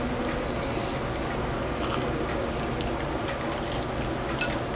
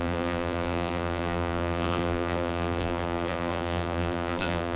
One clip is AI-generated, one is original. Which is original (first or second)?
first